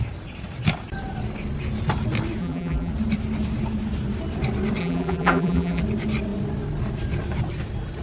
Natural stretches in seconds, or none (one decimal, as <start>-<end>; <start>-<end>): 0.0-2.4; 2.9-4.8; 5.8-8.0